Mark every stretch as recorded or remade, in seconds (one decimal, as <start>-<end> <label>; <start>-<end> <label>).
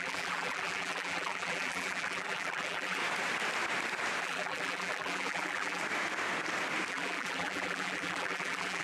0.0-3.0 remade; 3.0-4.2 recorded; 4.2-5.8 remade; 5.8-6.9 recorded; 6.9-8.8 remade